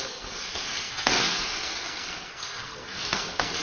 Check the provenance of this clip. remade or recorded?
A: remade